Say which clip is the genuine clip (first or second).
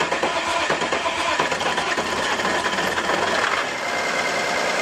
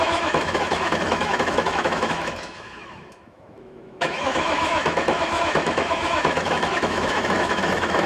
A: first